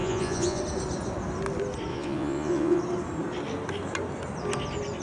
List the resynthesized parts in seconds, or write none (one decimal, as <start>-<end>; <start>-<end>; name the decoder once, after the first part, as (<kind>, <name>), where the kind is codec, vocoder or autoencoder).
0.0-0.6 (vocoder, Vocos); 1.9-2.8